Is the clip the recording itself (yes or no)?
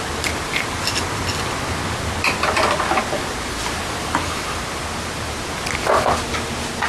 yes